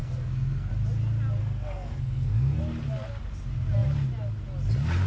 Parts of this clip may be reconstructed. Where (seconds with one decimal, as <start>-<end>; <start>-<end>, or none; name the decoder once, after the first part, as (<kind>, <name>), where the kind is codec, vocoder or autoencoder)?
0.0-0.7 (codec, SNAC); 1.4-2.6